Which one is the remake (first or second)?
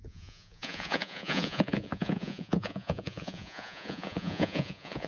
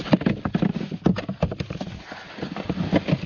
first